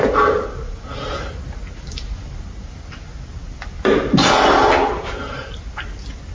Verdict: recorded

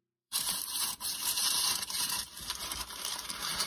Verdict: remade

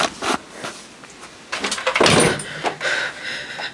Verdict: recorded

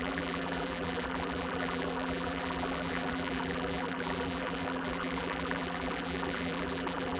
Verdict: remade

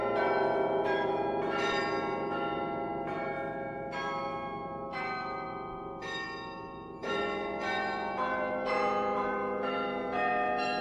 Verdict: remade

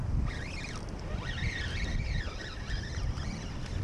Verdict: recorded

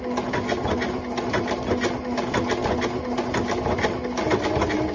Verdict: recorded